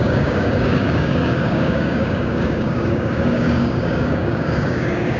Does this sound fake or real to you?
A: fake